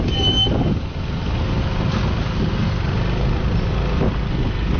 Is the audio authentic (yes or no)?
yes